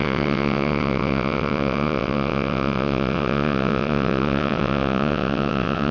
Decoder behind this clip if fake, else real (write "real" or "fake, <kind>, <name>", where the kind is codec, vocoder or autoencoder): fake, vocoder, WaveNeXt